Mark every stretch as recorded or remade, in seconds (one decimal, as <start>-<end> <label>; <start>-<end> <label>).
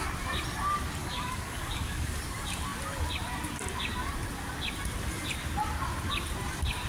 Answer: 0.0-1.0 recorded; 1.0-2.1 remade; 2.1-6.9 recorded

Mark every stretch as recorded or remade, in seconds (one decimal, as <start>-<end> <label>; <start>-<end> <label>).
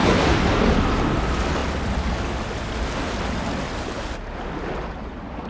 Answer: 0.0-5.5 recorded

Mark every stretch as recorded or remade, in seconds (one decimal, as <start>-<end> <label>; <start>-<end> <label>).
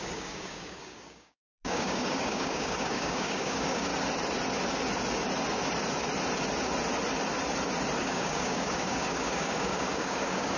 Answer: 0.0-3.9 remade; 3.9-8.0 recorded; 8.0-10.6 remade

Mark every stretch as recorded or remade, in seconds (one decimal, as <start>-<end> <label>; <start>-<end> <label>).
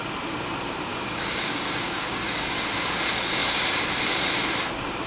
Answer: 0.0-0.9 recorded; 0.9-2.7 remade; 2.7-5.1 recorded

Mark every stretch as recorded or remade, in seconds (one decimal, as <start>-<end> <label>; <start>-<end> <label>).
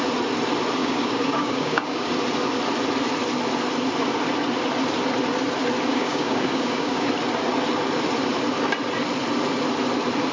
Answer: 0.0-0.8 recorded; 0.8-2.1 remade; 2.1-5.9 recorded; 5.9-7.1 remade; 7.1-10.3 recorded